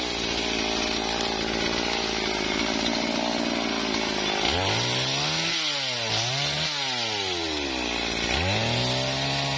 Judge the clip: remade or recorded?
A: recorded